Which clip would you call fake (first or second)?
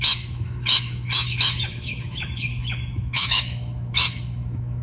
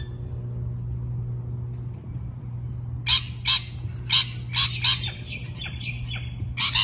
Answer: first